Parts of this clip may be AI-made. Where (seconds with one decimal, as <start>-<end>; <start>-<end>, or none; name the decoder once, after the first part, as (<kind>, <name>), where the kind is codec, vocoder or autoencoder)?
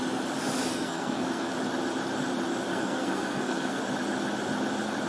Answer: 0.7-1.5 (codec, SNAC); 2.7-3.8